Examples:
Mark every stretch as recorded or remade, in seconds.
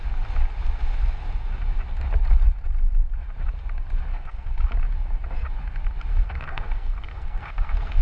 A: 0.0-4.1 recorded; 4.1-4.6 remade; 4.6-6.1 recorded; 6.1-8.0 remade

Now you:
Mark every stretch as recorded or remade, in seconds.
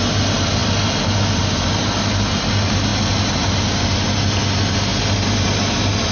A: 0.0-6.1 recorded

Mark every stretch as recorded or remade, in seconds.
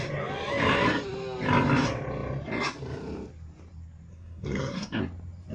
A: 0.0-4.1 recorded; 4.1-5.0 remade; 5.0-5.5 recorded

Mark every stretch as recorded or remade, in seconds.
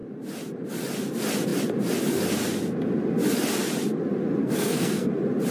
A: 0.0-4.4 recorded; 4.4-5.1 remade; 5.1-5.5 recorded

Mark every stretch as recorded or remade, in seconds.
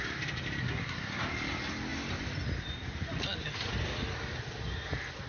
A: 0.0-0.6 recorded; 0.6-1.2 remade; 1.2-5.3 recorded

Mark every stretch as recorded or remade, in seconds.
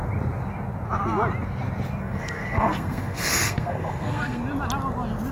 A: 0.0-2.0 recorded; 2.0-4.4 remade; 4.4-5.3 recorded